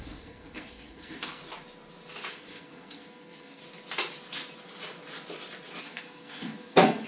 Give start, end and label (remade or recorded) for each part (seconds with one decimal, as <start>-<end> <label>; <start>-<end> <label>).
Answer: 0.0-1.4 remade; 1.4-2.3 recorded; 2.3-3.6 remade; 3.6-5.8 recorded; 5.8-7.1 remade